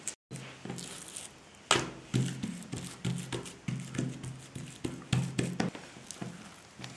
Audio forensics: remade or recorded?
recorded